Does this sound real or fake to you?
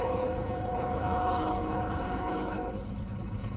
fake